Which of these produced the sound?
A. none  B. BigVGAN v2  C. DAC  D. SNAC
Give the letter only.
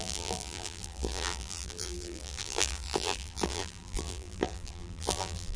B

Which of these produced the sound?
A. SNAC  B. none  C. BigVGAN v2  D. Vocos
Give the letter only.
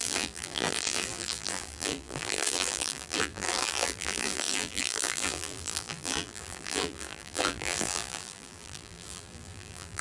C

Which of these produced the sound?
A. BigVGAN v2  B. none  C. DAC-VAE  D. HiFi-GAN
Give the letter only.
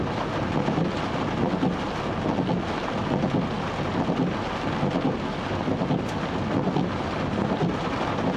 B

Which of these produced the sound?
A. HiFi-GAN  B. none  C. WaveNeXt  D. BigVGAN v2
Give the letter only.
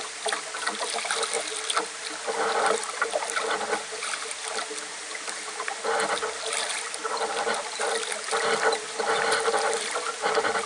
B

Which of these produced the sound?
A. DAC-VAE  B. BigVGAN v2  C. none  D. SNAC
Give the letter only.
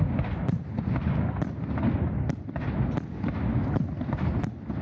C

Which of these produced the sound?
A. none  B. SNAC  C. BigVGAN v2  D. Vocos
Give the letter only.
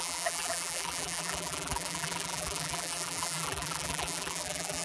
C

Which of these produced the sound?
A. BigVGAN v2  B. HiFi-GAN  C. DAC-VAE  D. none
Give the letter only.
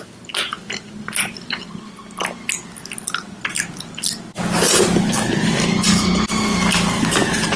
D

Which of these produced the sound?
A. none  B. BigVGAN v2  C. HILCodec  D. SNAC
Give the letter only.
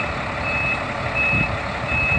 A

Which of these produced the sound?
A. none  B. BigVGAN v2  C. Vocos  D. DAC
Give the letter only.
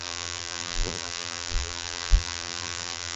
B